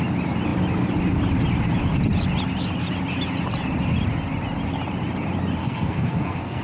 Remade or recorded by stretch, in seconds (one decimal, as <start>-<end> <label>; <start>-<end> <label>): 0.0-5.6 recorded; 5.6-6.6 remade